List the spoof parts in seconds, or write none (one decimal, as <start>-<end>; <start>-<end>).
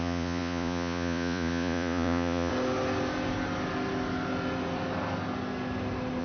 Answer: 0.0-2.5